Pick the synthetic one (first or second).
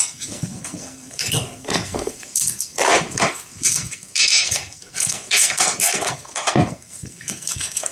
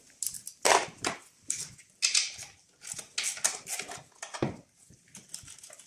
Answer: first